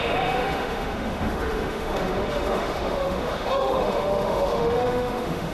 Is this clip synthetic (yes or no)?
yes